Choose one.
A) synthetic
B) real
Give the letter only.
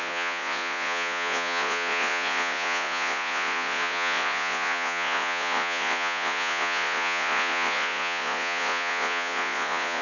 A